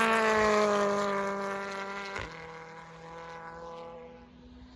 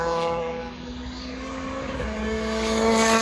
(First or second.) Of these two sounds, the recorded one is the first